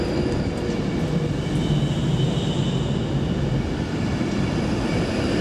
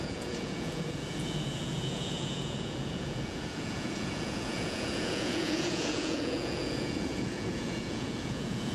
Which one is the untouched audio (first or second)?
first